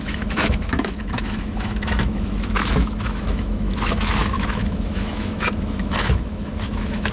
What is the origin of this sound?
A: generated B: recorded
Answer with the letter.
A